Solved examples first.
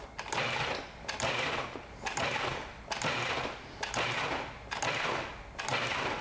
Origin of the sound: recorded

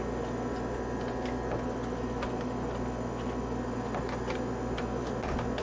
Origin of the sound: recorded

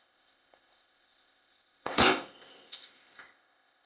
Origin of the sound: remade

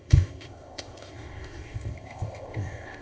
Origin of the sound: remade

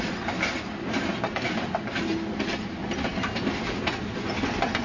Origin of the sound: recorded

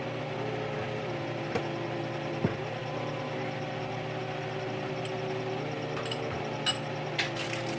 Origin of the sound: recorded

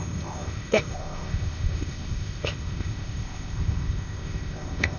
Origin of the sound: remade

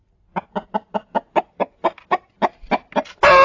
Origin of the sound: recorded